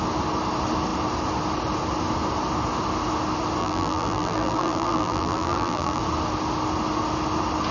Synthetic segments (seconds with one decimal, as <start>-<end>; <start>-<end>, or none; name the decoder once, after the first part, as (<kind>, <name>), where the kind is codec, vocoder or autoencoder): 3.6-6.0 (vocoder, BigVGAN v2)